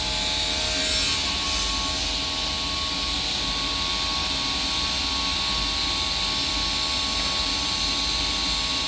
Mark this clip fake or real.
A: real